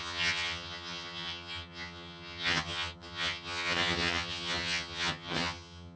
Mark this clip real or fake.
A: fake